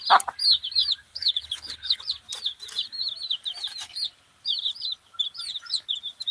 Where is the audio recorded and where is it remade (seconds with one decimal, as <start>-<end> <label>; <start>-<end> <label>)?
0.0-1.1 recorded; 1.1-2.0 remade; 2.0-6.3 recorded